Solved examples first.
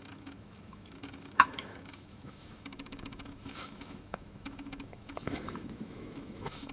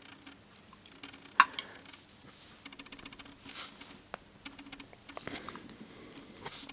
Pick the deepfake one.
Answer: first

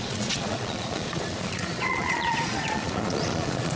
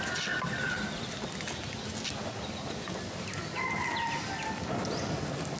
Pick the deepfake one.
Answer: first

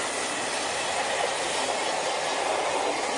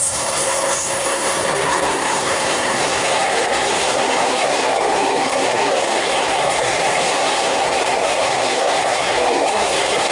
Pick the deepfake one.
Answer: second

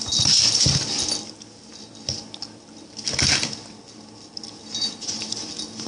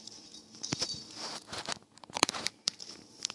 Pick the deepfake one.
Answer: second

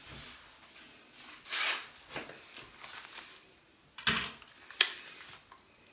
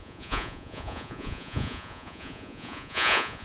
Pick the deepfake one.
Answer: second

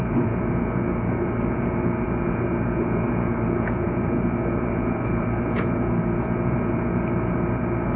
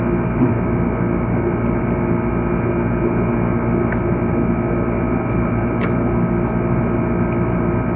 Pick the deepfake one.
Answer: first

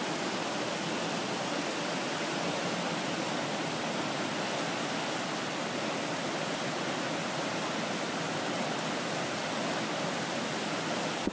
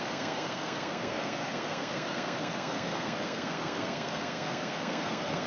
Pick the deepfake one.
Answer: second